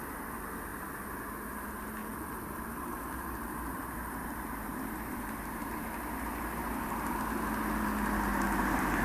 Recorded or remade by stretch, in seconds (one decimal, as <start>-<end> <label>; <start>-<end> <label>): 0.0-2.0 recorded; 2.0-7.2 remade; 7.2-9.0 recorded

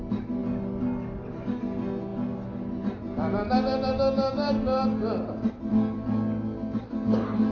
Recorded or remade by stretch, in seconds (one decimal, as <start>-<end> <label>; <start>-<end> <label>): 0.0-7.5 recorded